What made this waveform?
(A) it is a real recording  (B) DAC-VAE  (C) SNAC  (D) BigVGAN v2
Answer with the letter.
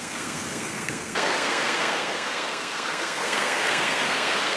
C